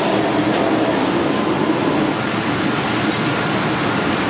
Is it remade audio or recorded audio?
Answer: recorded